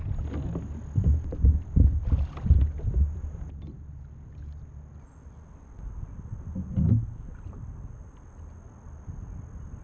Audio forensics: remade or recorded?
recorded